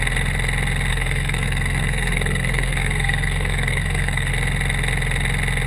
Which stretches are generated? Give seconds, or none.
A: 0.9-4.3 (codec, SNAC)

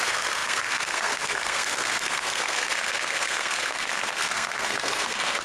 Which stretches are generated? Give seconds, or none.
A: 0.0-5.4 (codec, SNAC)

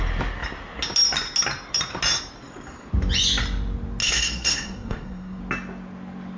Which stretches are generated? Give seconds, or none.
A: 4.0-5.4 (codec, SNAC)

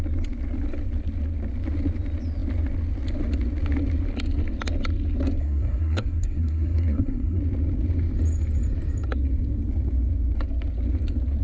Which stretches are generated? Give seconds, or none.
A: 5.4-7.4 (codec, SNAC)

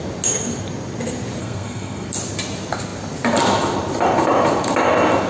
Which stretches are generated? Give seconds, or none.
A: 1.4-2.1 (codec, SNAC)

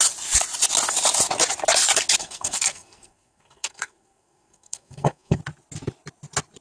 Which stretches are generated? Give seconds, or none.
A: 2.2-5.4 (codec, SNAC)

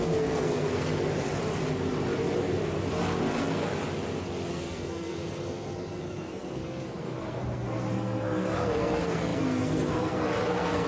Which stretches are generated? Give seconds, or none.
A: 0.0-0.9 (codec, SNAC); 3.2-3.7; 4.5-10.9